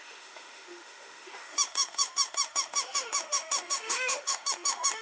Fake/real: fake